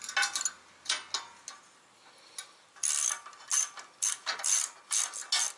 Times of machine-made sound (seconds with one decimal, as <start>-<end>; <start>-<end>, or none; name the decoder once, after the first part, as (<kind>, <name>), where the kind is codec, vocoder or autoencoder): none